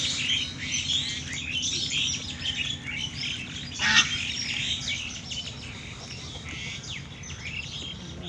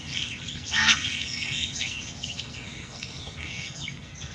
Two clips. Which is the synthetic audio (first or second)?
second